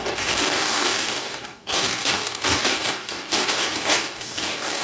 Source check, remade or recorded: remade